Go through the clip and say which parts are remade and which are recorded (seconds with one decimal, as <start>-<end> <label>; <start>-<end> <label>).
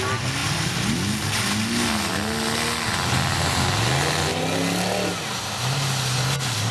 0.0-6.7 recorded